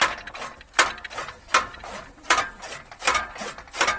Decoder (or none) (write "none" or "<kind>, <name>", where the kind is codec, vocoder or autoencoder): none